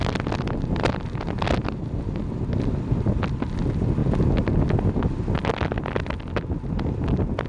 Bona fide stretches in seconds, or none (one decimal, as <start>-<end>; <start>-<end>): 0.0-7.5